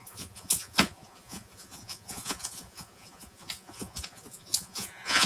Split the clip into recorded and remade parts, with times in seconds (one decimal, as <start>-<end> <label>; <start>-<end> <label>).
0.0-5.3 remade